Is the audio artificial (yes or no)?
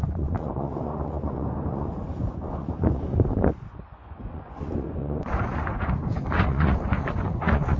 yes